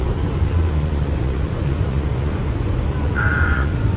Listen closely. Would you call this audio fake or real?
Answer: fake